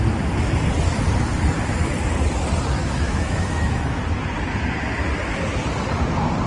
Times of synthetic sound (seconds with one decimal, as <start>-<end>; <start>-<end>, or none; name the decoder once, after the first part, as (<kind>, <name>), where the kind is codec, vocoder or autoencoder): 2.8-4.0 (autoencoder, DAC-VAE)